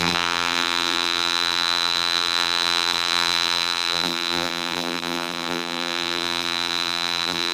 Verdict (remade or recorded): remade